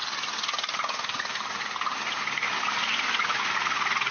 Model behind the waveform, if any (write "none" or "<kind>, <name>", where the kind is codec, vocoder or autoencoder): none